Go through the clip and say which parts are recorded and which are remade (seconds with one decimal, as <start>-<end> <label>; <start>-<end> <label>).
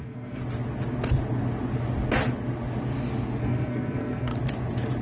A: 0.0-0.4 remade; 0.4-3.4 recorded; 3.4-4.3 remade; 4.3-5.0 recorded